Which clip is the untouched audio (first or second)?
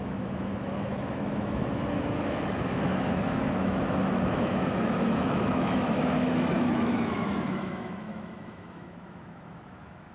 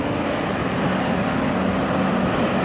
second